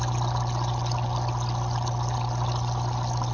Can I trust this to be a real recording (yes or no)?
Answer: yes